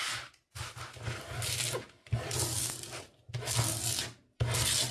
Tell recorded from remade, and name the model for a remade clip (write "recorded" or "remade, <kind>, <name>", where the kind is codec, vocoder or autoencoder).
recorded